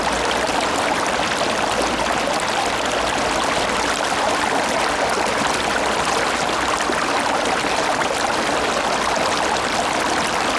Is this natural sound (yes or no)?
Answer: yes